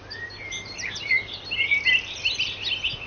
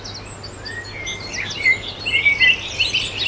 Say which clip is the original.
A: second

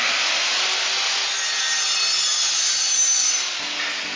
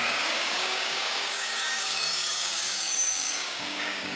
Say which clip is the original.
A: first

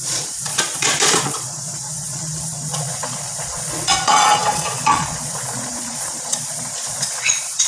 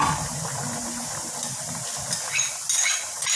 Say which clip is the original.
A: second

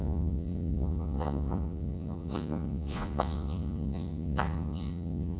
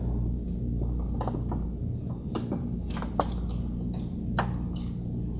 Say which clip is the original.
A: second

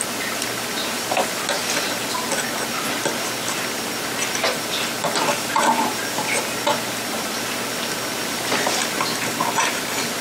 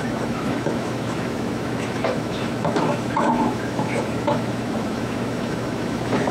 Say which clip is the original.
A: first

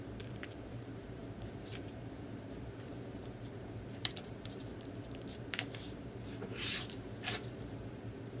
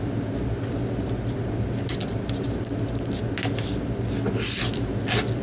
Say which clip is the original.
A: second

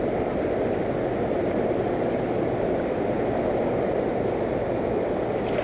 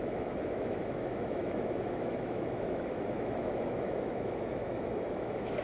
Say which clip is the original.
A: first